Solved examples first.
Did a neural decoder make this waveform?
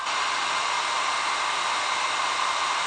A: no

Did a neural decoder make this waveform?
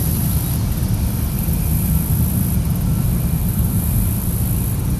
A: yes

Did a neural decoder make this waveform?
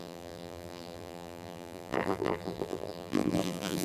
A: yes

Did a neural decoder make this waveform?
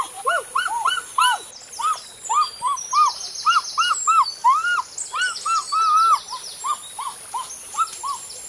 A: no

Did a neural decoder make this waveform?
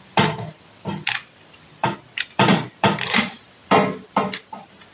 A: yes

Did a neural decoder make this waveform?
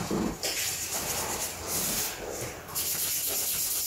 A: no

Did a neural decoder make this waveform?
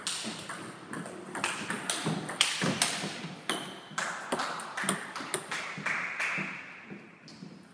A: no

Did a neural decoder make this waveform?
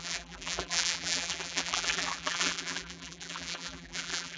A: yes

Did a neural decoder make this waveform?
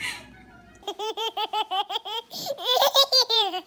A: yes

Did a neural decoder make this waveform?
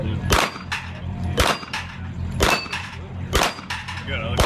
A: yes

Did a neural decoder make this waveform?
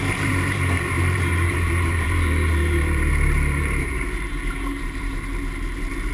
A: yes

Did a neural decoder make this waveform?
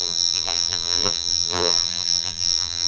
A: yes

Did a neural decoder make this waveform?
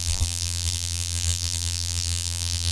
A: yes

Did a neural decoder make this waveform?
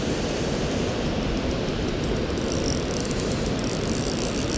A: no